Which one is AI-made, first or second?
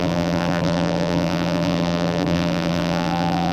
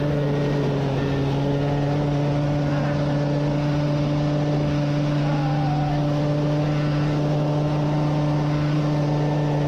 first